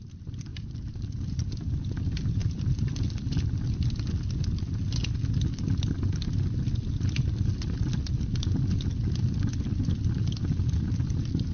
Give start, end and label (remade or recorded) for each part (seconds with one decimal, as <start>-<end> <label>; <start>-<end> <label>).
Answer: 0.0-0.5 recorded; 0.5-1.4 remade; 1.4-11.5 recorded